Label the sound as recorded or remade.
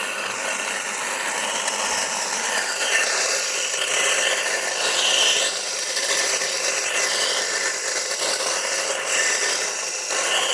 recorded